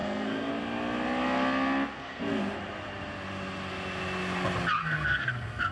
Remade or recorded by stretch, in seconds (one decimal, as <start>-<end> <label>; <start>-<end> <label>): 0.0-0.5 remade; 0.5-1.9 recorded; 1.9-2.4 remade; 2.4-4.8 recorded; 4.8-5.7 remade